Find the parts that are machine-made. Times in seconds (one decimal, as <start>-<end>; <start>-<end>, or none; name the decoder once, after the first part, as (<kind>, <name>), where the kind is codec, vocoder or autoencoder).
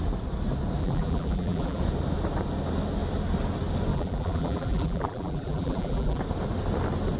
0.8-1.8 (vocoder, BigVGAN v2); 3.9-6.2